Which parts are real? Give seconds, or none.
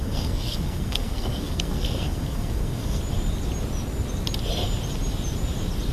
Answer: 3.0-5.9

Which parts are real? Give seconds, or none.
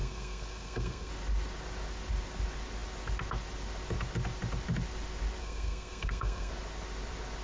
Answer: 1.1-5.4; 6.5-7.4